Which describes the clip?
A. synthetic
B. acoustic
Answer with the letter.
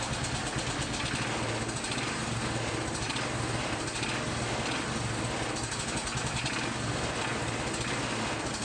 B